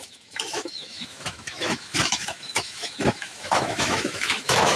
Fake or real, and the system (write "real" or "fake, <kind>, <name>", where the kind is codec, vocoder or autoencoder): fake, autoencoder, DAC-VAE